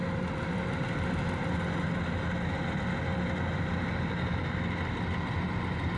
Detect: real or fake real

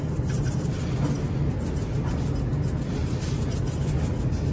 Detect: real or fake real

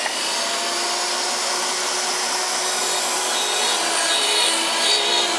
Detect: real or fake real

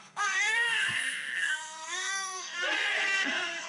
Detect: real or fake fake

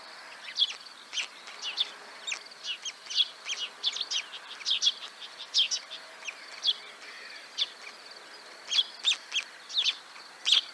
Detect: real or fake real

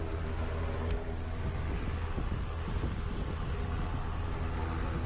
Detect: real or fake real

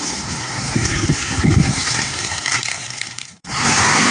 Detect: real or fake fake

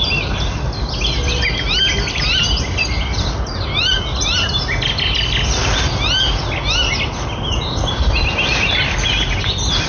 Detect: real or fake real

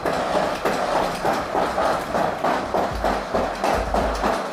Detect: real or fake real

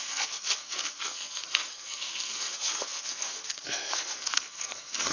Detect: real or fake fake